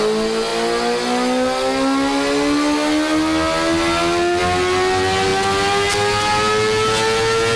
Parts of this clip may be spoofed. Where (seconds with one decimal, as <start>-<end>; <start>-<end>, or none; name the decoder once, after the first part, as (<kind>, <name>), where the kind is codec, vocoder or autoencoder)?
none

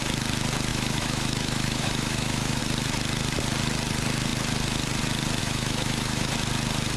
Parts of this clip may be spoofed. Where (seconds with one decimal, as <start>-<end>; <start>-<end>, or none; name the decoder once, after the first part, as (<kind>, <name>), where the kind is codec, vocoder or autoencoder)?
0.7-2.6 (autoencoder, DAC-VAE); 5.4-6.3

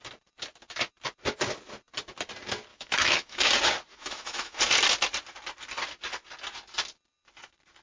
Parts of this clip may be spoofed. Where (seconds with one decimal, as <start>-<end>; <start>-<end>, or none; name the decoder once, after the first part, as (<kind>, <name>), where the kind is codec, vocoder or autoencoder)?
2.7-3.5 (autoencoder, DAC-VAE); 3.9-4.6

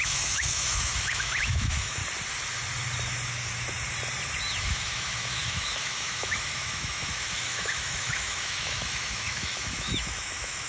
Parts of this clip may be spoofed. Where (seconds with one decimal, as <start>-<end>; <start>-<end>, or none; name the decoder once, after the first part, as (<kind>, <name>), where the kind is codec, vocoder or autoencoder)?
0.0-2.0 (autoencoder, DAC-VAE); 4.6-10.7

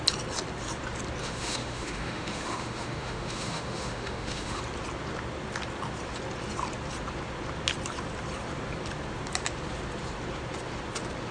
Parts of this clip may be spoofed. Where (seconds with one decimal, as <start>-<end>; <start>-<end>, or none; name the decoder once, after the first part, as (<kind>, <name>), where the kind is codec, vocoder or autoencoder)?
1.2-4.6 (autoencoder, DAC-VAE)

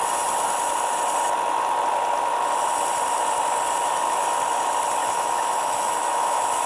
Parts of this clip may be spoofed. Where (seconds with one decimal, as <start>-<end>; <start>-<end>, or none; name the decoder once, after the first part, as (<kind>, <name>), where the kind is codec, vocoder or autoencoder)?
5.0-6.7 (autoencoder, DAC-VAE)

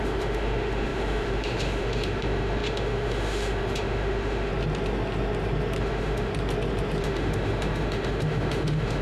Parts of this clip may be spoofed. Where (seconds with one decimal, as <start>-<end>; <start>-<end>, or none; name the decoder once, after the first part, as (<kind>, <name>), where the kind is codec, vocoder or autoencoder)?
0.0-4.5 (autoencoder, DAC-VAE); 5.8-6.3; 7.0-9.0

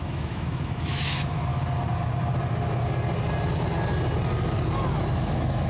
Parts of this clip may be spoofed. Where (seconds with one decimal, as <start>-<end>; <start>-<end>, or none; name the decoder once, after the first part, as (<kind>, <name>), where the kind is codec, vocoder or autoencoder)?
0.0-1.5 (autoencoder, DAC-VAE); 4.9-5.7